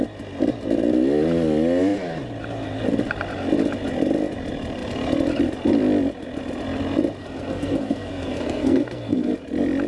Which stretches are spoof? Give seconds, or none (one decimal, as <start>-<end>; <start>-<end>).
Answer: 7.2-9.3